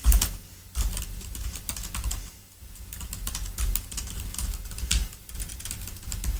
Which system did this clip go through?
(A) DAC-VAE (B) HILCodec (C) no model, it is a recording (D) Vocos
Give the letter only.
C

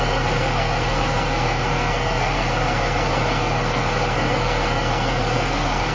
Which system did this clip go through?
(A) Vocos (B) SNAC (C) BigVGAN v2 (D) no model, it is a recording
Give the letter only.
B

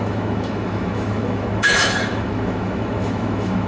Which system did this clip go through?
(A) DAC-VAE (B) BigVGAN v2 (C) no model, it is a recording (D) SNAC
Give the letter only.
A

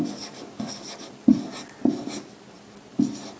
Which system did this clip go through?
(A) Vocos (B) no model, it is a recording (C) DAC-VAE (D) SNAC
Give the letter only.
B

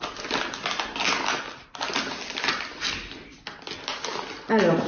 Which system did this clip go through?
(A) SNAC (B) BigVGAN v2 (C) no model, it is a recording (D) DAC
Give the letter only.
C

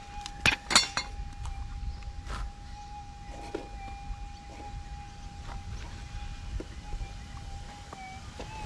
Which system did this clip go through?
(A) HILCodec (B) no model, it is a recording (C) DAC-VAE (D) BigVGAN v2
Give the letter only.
B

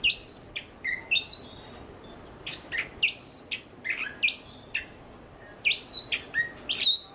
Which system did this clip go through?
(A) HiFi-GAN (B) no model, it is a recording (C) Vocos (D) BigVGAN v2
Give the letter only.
B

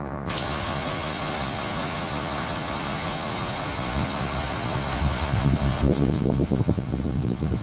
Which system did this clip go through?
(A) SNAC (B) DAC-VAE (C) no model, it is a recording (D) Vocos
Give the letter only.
D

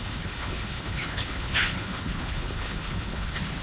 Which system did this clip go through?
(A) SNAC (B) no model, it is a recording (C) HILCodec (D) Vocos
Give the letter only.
C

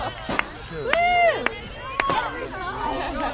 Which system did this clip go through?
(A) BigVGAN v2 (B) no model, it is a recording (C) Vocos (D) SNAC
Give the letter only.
B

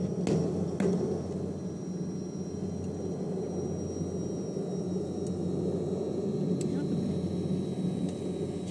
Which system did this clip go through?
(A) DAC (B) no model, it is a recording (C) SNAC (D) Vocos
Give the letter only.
B